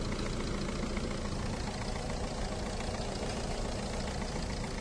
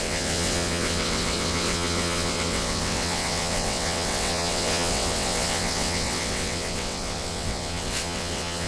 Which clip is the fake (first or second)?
second